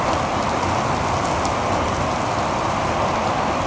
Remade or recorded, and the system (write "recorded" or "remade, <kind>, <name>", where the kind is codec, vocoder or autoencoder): recorded